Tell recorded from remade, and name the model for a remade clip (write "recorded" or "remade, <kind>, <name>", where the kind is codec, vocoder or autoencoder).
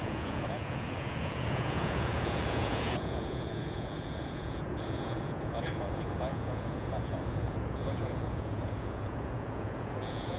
remade, vocoder, Vocos